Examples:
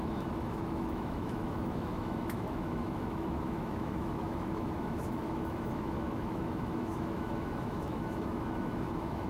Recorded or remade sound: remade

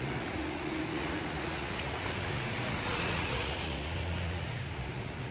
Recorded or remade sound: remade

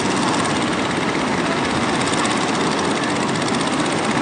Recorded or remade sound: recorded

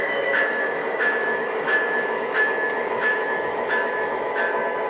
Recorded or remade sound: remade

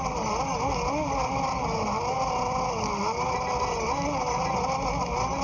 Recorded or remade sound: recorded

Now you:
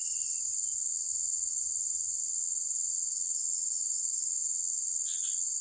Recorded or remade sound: recorded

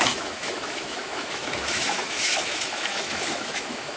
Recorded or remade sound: remade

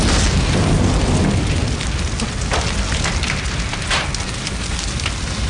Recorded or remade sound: recorded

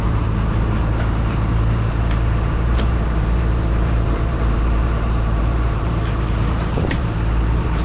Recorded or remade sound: remade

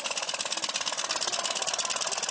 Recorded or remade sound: recorded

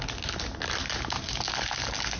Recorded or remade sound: recorded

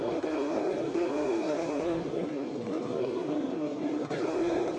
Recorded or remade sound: remade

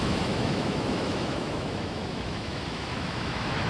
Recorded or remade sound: remade